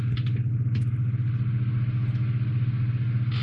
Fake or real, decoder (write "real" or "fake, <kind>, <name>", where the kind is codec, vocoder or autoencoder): real